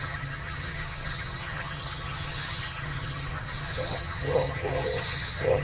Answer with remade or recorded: remade